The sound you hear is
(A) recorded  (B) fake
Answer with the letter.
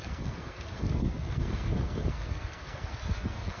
B